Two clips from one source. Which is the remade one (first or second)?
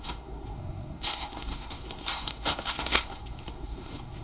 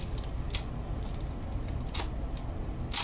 first